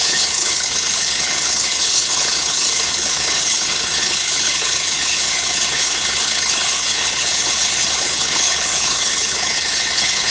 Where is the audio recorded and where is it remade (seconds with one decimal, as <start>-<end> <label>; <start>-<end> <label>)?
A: 0.0-10.3 remade